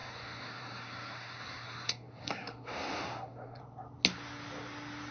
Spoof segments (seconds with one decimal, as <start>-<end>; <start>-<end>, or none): 0.0-3.6